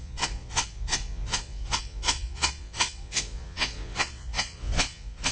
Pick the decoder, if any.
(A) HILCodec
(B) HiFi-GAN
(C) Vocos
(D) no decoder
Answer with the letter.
C